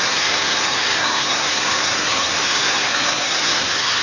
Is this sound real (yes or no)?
no